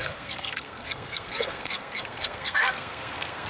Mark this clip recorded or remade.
remade